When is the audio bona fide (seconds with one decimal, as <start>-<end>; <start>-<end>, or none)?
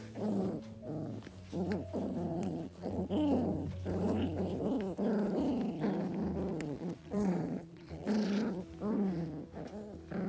0.0-2.3; 3.1-6.5; 8.4-10.3